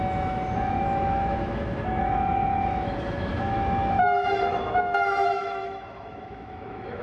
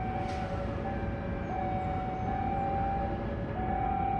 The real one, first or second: second